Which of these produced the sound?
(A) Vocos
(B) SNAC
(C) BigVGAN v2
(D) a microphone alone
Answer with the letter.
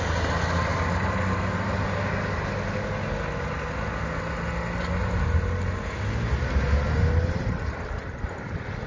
D